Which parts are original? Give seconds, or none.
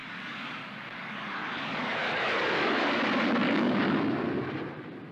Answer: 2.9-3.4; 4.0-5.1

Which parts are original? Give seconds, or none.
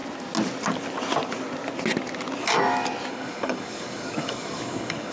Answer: 0.0-3.1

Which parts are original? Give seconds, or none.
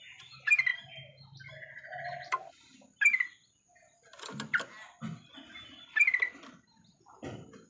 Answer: 0.0-7.7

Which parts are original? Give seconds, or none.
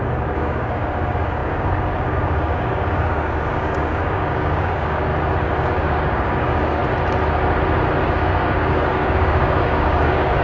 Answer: 5.1-5.6; 6.8-8.0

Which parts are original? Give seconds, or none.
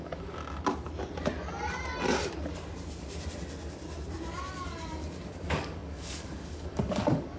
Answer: 0.4-4.5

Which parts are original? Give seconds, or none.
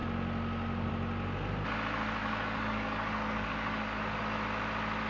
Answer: 0.0-2.2; 4.2-5.1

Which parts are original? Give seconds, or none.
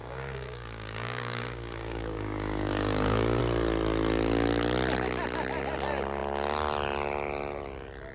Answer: 3.4-8.1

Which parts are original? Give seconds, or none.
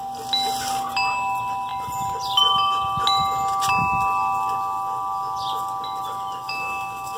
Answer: 0.0-6.4